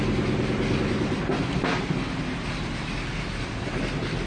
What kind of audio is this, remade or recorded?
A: recorded